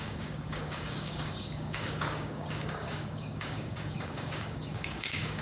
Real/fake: fake